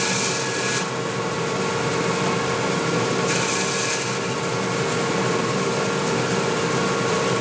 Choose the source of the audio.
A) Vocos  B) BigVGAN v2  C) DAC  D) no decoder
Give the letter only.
D